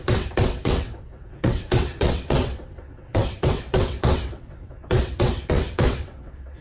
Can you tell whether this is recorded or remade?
remade